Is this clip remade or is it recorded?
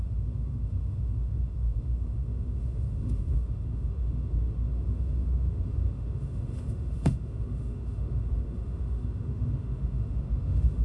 remade